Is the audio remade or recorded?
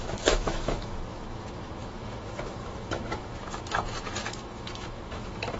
remade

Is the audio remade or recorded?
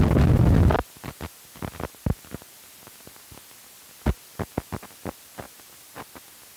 recorded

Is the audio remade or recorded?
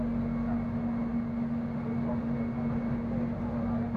recorded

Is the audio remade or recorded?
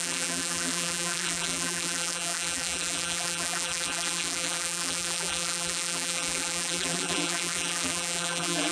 remade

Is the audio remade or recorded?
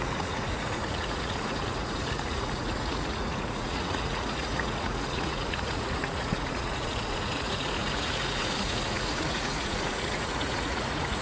remade